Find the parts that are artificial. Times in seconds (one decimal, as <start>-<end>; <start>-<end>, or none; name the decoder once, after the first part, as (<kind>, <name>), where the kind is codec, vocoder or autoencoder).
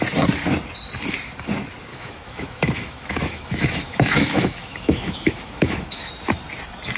1.9-6.1 (autoencoder, DAC-VAE)